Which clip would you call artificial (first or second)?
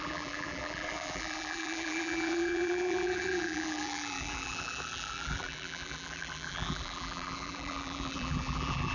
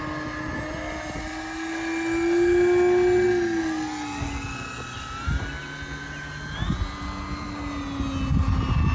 first